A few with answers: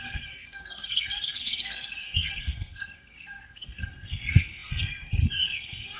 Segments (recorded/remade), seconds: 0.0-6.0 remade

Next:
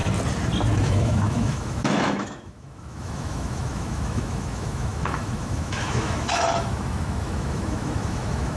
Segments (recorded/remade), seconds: 0.0-0.7 recorded; 0.7-8.6 remade

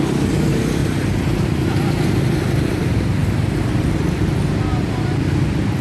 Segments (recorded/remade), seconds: 0.0-0.8 remade; 0.8-2.1 recorded; 2.1-3.2 remade; 3.2-4.8 recorded; 4.8-5.8 remade

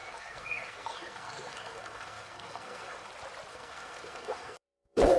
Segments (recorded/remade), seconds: 0.0-3.1 remade; 3.1-3.5 recorded; 3.5-5.2 remade